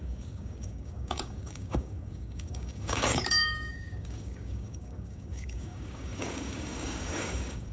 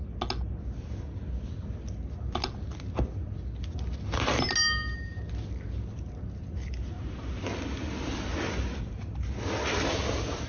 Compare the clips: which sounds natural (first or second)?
second